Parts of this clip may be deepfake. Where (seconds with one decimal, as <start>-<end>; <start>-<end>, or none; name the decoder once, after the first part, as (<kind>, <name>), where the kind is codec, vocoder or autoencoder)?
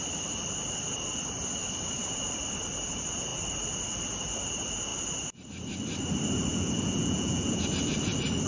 6.5-7.6 (vocoder, Vocos)